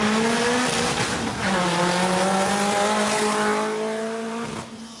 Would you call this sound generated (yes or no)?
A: no